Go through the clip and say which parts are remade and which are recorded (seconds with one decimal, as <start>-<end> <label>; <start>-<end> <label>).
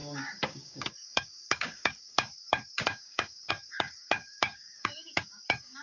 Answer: 0.0-5.8 remade